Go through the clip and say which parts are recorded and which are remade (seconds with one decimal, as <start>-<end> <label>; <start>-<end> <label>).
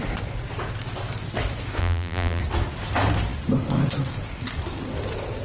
0.0-1.8 recorded; 1.8-2.4 remade; 2.4-5.4 recorded